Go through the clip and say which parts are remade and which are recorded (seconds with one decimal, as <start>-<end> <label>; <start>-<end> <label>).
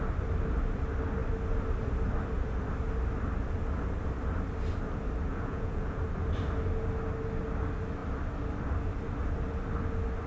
0.0-5.3 recorded; 5.3-6.0 remade; 6.0-10.3 recorded